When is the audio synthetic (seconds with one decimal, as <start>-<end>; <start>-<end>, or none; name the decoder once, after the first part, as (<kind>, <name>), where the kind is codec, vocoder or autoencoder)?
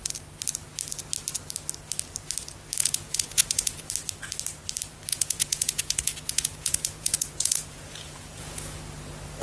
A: 2.8-3.9 (vocoder, Vocos); 5.1-8.8